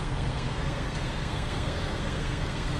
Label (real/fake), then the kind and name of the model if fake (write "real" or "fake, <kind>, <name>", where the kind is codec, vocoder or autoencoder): fake, codec, SNAC